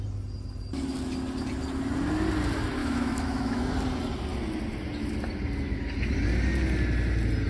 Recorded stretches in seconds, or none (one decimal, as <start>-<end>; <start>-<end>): 0.0-2.8; 3.7-7.5